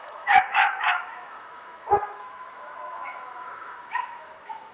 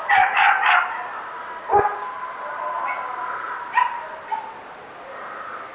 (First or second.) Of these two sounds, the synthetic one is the first